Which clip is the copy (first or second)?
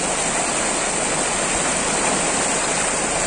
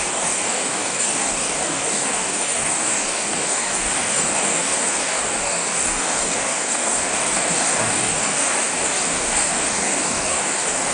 second